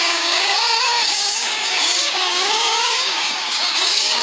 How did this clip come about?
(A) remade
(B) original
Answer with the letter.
A